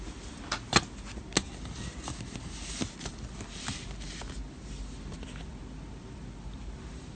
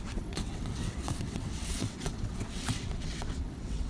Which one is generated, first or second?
second